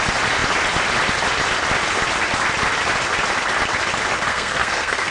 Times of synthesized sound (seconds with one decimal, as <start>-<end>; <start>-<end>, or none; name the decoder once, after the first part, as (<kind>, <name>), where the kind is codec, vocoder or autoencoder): 4.3-5.1 (codec, SNAC)